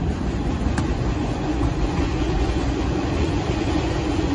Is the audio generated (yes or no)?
yes